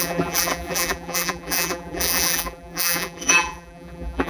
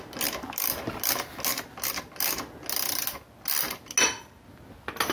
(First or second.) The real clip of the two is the second